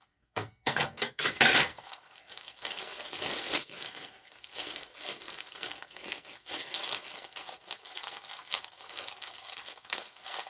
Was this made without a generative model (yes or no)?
no